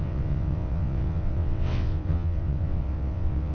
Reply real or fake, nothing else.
fake